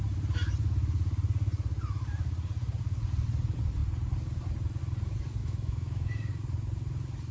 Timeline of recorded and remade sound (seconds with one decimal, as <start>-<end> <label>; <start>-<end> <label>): 0.0-5.4 recorded; 5.4-6.3 remade; 6.3-7.3 recorded